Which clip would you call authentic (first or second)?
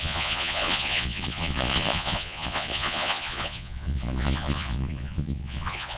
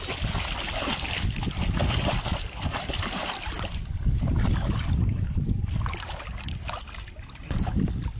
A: second